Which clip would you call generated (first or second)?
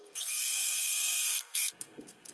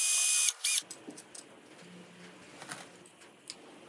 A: first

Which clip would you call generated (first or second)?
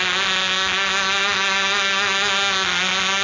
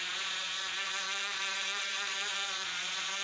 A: second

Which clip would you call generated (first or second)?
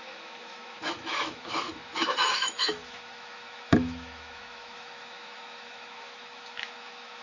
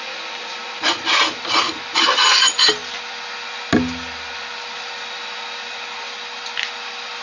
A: first